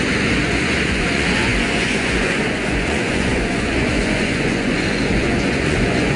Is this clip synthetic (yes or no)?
yes